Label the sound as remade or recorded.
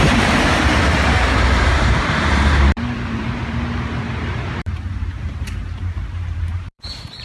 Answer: remade